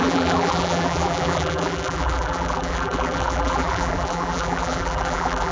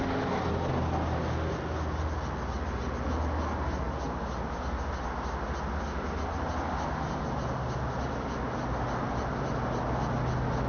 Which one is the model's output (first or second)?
first